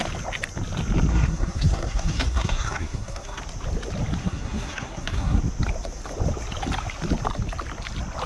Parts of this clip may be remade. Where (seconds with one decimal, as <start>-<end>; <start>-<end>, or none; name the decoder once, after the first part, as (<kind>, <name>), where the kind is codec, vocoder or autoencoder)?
1.1-3.4 (codec, SNAC); 4.2-5.4